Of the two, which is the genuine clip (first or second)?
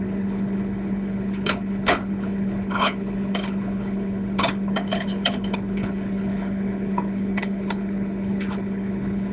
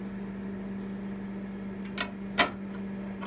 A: second